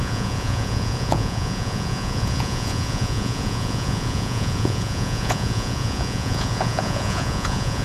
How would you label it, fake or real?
fake